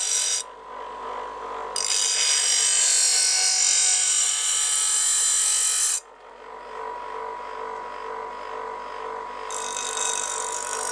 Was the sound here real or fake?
real